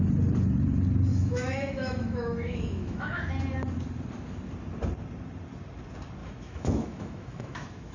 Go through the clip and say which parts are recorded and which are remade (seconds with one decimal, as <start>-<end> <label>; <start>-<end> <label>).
0.0-1.1 recorded; 1.1-3.3 remade; 3.3-6.2 recorded; 6.2-7.9 remade